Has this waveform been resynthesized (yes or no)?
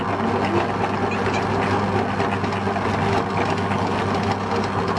no